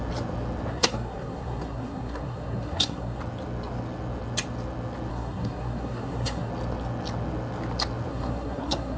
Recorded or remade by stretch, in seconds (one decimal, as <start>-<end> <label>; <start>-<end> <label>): 0.0-0.7 recorded; 0.7-3.2 remade; 3.2-5.1 recorded; 5.1-6.5 remade; 6.5-8.1 recorded; 8.1-9.0 remade